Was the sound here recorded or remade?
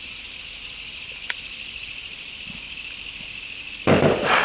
recorded